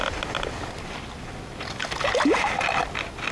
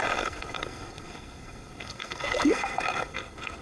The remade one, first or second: second